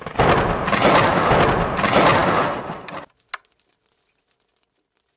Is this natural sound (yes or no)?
yes